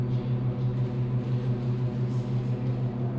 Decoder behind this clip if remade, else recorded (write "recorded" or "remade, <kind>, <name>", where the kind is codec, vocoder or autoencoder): recorded